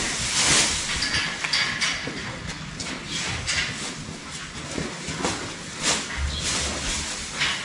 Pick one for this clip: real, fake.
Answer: real